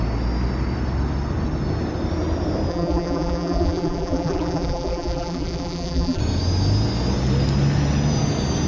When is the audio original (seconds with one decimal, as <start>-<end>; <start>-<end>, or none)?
0.0-2.7; 6.2-8.7